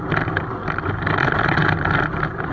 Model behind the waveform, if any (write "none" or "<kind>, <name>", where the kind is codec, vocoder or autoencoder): none